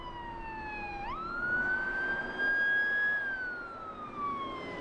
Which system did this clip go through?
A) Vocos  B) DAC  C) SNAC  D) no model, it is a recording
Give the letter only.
D